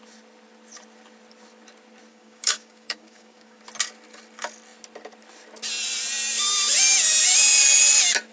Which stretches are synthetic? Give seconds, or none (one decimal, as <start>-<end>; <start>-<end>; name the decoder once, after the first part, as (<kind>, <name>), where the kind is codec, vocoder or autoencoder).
2.1-3.6 (codec, DAC)